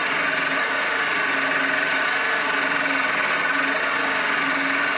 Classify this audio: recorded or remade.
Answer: recorded